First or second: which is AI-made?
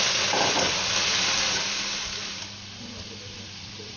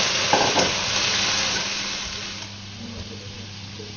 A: first